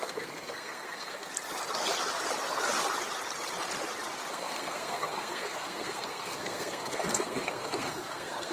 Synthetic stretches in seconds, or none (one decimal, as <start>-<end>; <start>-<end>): 0.0-1.3; 4.3-8.5